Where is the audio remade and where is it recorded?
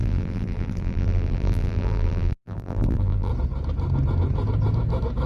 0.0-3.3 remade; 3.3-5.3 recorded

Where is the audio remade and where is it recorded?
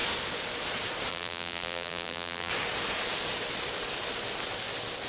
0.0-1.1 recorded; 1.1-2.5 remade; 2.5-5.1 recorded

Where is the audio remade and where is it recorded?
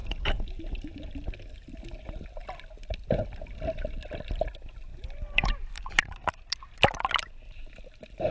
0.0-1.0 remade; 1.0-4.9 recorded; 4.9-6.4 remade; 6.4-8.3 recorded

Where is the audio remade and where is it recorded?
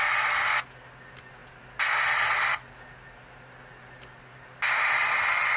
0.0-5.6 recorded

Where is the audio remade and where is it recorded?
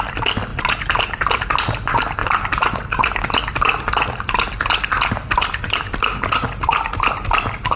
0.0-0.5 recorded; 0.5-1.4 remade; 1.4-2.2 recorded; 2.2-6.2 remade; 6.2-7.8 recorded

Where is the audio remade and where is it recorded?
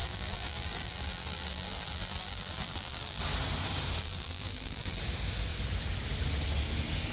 0.0-3.2 remade; 3.2-4.0 recorded; 4.0-5.0 remade; 5.0-7.1 recorded